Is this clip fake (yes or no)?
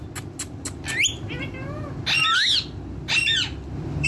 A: no